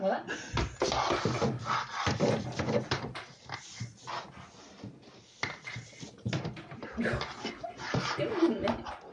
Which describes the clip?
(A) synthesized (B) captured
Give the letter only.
B